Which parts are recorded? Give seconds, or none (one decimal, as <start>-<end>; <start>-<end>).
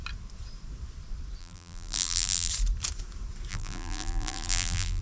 0.0-1.4; 2.5-3.5